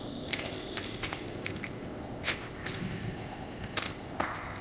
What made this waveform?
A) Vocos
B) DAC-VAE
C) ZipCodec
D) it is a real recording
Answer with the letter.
C